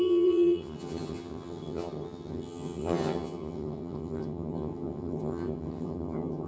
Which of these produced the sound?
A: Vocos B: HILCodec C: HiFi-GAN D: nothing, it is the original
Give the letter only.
C